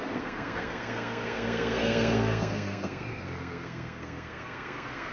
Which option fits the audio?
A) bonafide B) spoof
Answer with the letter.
B